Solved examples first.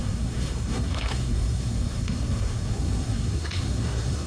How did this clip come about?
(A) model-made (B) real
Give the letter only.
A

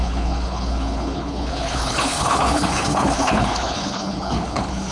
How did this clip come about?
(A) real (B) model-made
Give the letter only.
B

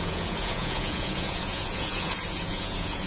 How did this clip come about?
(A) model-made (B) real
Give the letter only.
A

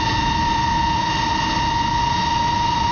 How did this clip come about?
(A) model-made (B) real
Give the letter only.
A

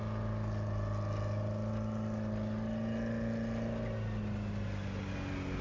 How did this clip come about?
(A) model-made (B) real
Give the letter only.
B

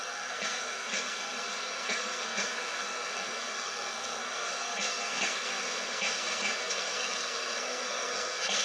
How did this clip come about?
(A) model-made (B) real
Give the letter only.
A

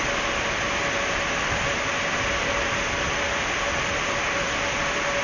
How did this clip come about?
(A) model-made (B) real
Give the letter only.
B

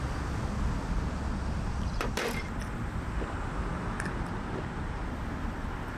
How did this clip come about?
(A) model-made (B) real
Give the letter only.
B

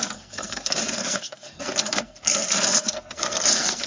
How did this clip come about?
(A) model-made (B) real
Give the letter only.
A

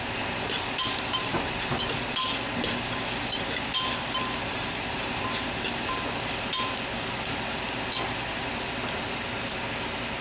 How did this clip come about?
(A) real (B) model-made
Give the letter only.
A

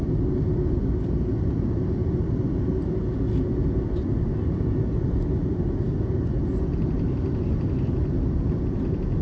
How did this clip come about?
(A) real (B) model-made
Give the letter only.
A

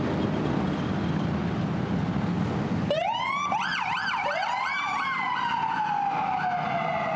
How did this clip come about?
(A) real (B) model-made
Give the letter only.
A